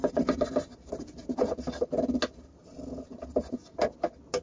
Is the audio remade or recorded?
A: recorded